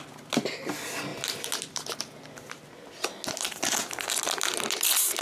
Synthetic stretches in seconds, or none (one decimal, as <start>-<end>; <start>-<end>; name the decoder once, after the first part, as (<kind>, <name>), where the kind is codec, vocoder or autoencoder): none